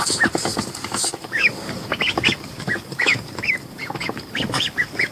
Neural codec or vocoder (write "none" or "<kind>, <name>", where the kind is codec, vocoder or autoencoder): codec, DAC